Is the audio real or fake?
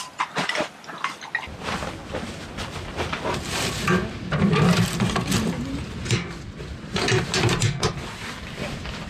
real